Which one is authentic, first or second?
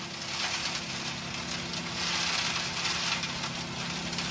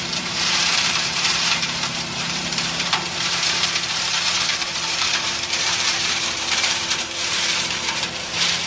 first